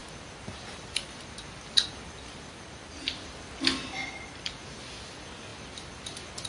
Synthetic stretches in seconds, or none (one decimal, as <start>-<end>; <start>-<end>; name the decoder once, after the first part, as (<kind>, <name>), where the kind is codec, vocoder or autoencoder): none